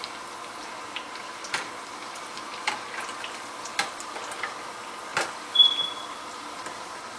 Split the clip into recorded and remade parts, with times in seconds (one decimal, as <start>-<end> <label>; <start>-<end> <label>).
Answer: 0.0-7.2 recorded